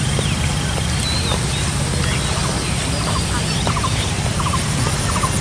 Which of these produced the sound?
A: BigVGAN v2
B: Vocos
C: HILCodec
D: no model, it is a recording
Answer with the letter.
D